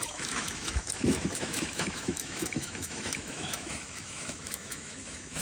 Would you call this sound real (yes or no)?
no